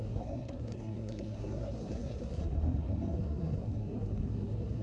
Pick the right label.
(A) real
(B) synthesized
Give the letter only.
B